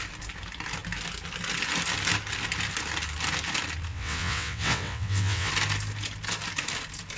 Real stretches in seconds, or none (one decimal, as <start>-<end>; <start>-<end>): 0.0-3.9; 5.5-7.2